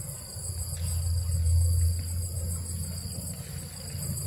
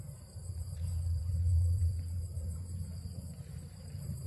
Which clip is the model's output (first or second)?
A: second